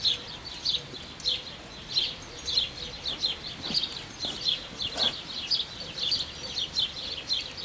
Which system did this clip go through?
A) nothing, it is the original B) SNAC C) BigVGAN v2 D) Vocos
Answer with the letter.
A